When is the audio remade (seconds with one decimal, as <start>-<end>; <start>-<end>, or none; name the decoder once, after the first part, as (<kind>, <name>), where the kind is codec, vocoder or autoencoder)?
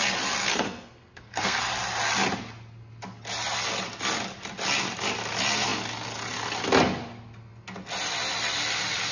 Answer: 0.4-1.7 (codec, SNAC)